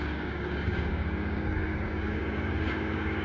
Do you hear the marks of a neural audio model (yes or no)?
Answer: yes